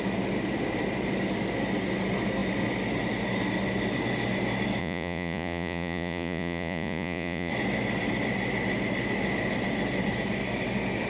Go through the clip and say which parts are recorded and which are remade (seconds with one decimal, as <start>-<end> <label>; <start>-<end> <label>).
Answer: 0.0-4.8 recorded; 4.8-7.5 remade; 7.5-11.1 recorded